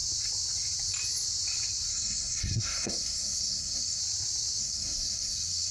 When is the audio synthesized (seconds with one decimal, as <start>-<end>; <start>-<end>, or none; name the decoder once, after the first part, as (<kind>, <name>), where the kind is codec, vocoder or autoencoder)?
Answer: 1.9-4.0 (codec, SNAC); 4.6-5.7